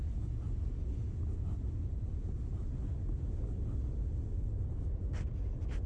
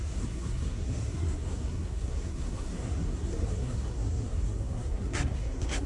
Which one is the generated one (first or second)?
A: second